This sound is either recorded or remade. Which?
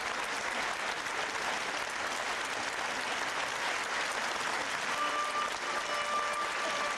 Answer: recorded